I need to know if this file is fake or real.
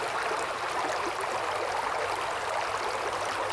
real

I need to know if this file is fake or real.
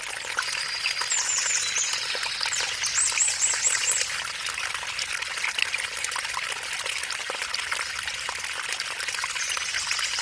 real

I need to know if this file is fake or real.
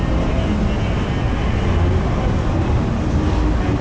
real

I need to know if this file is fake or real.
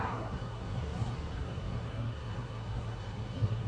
fake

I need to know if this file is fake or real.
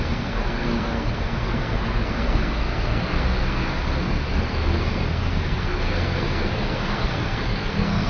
fake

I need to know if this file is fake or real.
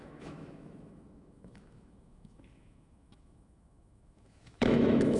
fake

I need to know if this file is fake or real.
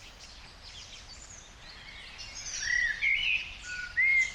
real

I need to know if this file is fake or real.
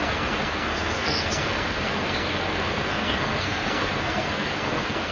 fake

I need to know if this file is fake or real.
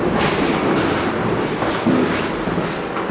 real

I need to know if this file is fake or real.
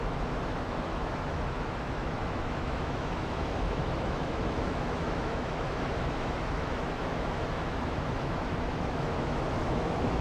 fake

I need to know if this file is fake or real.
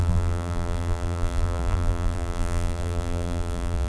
fake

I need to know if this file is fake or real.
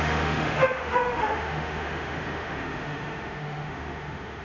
fake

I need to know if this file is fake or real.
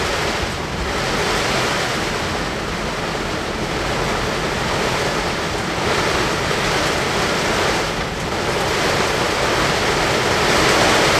real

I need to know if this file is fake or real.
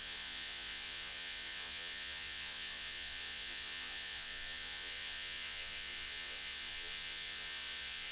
fake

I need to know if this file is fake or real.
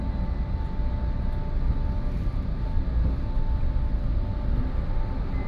real